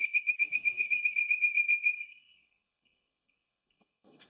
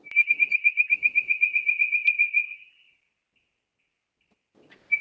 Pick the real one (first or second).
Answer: second